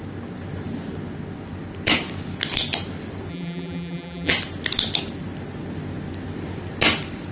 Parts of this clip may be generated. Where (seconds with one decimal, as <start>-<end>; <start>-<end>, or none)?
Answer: 3.3-4.3